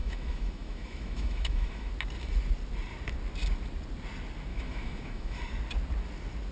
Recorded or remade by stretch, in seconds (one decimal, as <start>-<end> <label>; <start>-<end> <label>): 0.0-1.9 remade; 1.9-4.5 recorded; 4.5-5.4 remade; 5.4-6.5 recorded